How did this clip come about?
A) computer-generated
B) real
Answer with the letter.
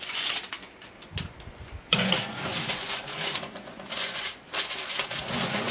A